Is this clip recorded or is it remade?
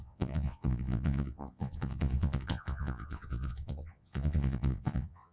remade